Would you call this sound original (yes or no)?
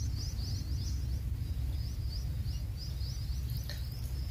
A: yes